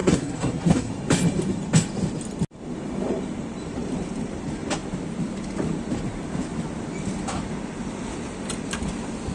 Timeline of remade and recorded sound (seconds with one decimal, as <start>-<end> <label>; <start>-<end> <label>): 0.0-0.9 remade; 0.9-9.3 recorded